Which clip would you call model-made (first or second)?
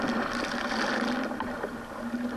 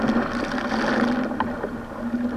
first